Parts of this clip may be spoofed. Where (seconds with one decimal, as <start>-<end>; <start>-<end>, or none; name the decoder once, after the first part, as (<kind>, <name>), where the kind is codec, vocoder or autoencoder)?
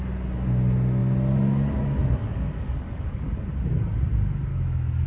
2.2-3.2 (codec, DAC); 4.5-5.1